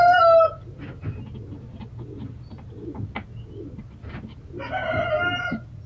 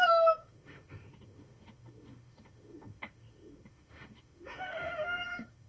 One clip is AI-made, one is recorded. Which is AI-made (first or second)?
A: second